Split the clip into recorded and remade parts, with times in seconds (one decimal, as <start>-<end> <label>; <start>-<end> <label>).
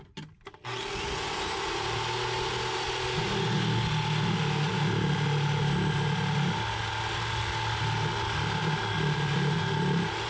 0.0-10.3 recorded